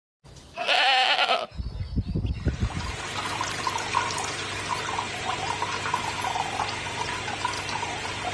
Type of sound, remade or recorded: recorded